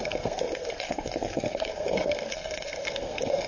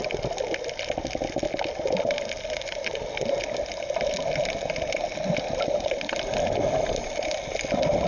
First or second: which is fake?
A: first